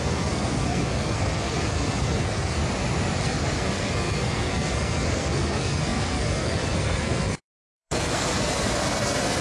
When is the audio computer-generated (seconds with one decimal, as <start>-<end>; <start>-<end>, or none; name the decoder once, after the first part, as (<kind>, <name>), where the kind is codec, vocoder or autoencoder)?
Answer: 0.0-2.6 (codec, SNAC); 3.2-9.4